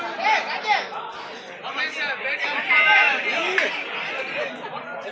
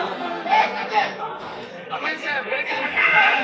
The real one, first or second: first